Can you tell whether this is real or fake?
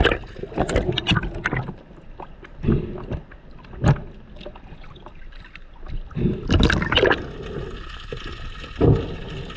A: real